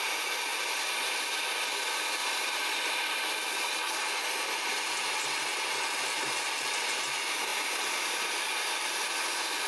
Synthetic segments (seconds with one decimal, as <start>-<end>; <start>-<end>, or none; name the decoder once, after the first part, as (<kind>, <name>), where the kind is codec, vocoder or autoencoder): 2.2-3.2 (vocoder, BigVGAN v2); 7.5-8.1